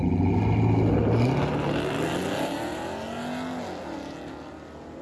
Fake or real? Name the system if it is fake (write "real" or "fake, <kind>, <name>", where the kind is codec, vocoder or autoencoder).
real